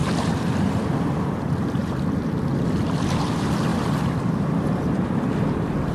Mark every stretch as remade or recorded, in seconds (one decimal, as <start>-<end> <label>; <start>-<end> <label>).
0.0-0.6 remade; 0.6-1.8 recorded; 1.8-2.5 remade; 2.5-3.7 recorded; 3.7-5.1 remade; 5.1-5.9 recorded